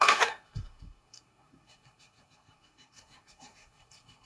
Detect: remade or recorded remade